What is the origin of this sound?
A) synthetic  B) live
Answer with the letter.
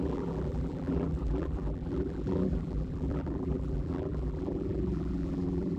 A